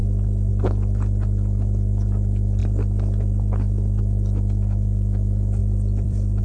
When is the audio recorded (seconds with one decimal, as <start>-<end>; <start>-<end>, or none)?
0.5-2.6; 4.0-5.6